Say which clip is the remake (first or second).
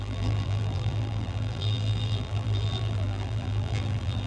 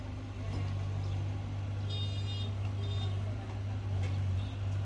first